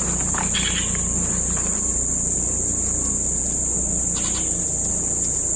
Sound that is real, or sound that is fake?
real